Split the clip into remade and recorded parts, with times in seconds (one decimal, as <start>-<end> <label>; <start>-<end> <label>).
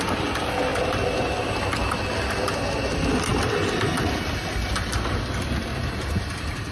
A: 0.0-0.7 remade; 0.7-2.5 recorded; 2.5-3.3 remade; 3.3-5.3 recorded; 5.3-5.7 remade; 5.7-6.2 recorded; 6.2-6.7 remade